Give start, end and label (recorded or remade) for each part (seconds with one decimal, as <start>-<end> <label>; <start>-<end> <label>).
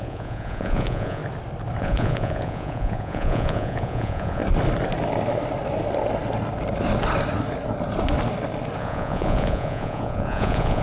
0.0-1.2 remade; 1.2-1.8 recorded; 1.8-4.4 remade; 4.4-8.8 recorded; 8.8-10.8 remade